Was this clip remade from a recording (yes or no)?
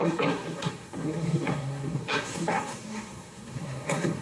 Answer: yes